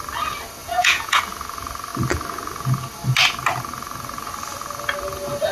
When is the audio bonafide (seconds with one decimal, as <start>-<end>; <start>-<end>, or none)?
0.0-0.6; 1.2-5.5